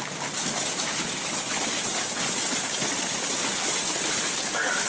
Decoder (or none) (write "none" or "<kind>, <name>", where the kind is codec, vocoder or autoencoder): none